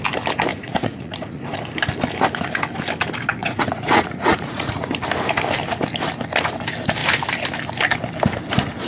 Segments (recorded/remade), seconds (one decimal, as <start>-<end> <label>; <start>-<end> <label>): 0.0-0.5 recorded; 0.5-1.6 remade; 1.6-3.4 recorded; 3.4-4.9 remade; 4.9-8.9 recorded